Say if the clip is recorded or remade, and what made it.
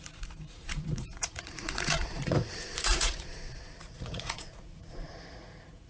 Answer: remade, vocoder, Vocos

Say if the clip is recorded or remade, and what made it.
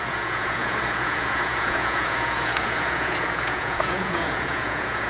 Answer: remade, vocoder, Vocos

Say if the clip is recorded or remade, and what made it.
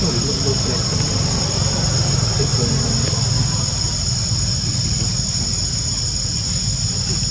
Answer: recorded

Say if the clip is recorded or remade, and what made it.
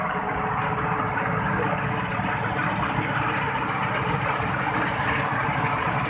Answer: recorded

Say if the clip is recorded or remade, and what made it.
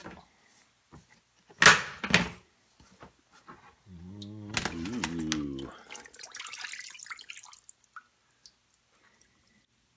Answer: recorded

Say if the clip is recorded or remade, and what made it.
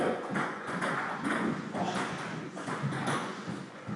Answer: remade, vocoder, Vocos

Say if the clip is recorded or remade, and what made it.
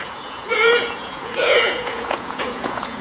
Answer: remade, vocoder, Vocos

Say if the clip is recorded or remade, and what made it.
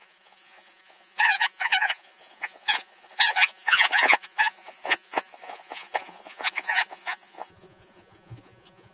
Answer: remade, vocoder, Vocos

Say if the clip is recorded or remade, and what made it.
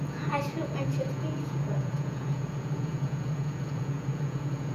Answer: remade, vocoder, Vocos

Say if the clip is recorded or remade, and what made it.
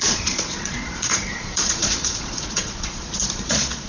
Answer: remade, vocoder, Vocos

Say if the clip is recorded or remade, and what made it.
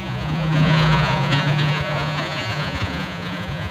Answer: remade, vocoder, Vocos